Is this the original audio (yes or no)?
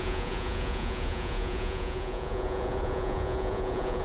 no